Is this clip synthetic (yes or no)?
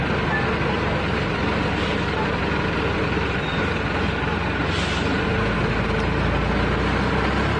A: no